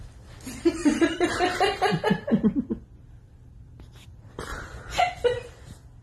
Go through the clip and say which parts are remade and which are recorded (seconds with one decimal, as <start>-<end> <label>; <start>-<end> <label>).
0.0-0.8 recorded; 0.8-1.4 remade; 1.4-4.5 recorded; 4.5-5.0 remade; 5.0-6.0 recorded